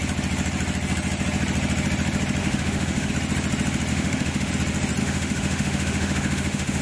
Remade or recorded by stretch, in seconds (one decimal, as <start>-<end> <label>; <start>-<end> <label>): 0.0-2.4 recorded; 2.4-3.1 remade; 3.1-3.9 recorded; 3.9-4.5 remade; 4.5-5.0 recorded; 5.0-6.8 remade